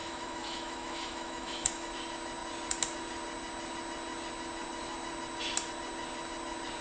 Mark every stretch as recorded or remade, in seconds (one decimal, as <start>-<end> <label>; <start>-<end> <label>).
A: 0.0-1.9 remade; 1.9-6.8 recorded

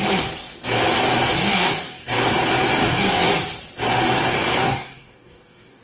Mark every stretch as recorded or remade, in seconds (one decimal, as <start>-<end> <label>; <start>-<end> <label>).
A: 0.0-1.4 recorded; 1.4-2.3 remade; 2.3-2.8 recorded; 2.8-3.3 remade; 3.3-4.3 recorded; 4.3-5.8 remade

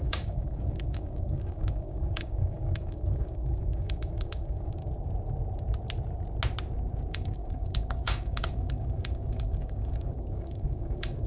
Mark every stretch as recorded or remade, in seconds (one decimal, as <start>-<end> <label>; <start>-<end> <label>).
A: 0.0-4.8 remade; 4.8-7.1 recorded; 7.1-11.3 remade

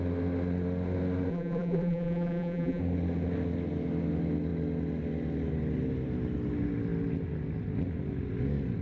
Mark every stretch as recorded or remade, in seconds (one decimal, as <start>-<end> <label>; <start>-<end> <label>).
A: 0.0-1.3 recorded; 1.3-2.8 remade; 2.8-8.8 recorded

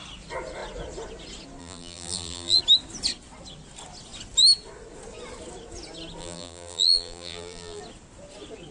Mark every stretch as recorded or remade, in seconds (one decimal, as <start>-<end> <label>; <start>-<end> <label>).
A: 0.0-1.6 recorded; 1.6-2.6 remade; 2.6-6.2 recorded; 6.2-7.8 remade; 7.8-8.7 recorded

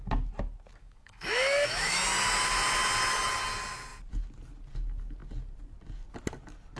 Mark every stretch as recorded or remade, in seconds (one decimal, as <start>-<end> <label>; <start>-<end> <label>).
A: 0.0-0.8 recorded; 0.8-2.0 remade; 2.0-6.8 recorded

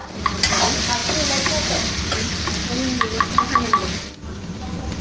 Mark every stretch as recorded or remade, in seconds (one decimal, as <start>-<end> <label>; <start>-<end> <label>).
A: 0.0-5.0 recorded

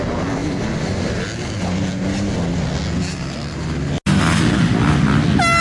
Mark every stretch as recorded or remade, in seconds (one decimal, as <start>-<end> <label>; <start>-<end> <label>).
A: 0.0-5.6 recorded